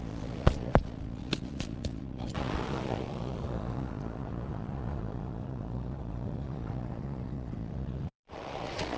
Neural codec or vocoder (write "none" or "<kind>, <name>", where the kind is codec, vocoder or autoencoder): vocoder, Vocos